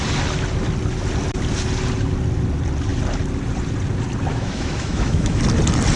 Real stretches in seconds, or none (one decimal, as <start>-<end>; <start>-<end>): 0.0-4.3; 5.4-6.0